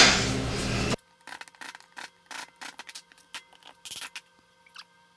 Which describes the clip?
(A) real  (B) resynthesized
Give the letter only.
A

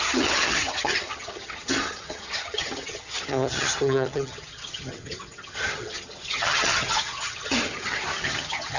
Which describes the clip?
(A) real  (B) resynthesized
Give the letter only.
B